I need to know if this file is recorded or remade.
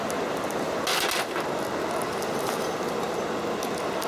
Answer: recorded